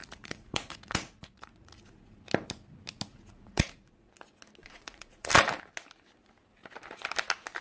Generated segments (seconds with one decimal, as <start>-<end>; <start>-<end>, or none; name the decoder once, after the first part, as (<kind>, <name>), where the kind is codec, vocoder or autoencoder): 0.0-2.2 (vocoder, Vocos); 3.1-4.1; 4.6-5.3